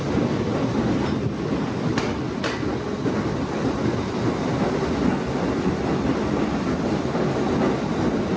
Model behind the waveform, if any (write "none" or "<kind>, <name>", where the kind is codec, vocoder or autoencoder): none